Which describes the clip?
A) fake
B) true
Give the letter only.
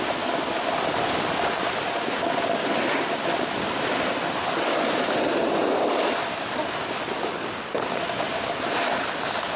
B